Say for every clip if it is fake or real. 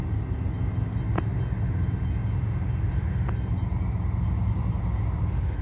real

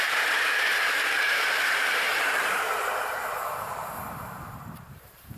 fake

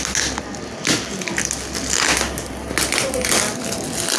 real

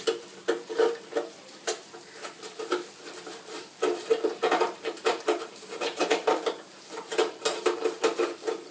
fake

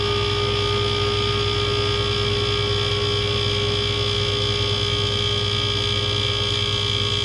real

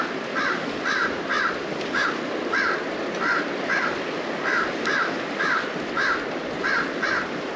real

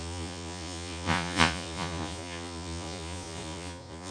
fake